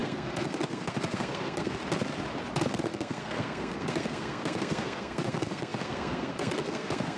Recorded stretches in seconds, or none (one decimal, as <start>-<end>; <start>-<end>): 1.8-2.7